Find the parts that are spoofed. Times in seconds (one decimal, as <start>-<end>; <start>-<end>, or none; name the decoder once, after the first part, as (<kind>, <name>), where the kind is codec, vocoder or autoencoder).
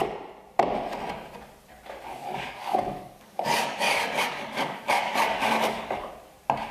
2.1-6.1 (codec, DAC)